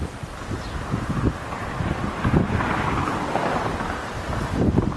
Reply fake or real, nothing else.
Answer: real